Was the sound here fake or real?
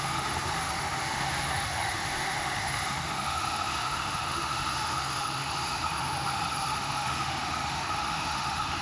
fake